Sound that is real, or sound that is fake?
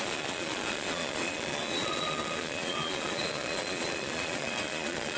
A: fake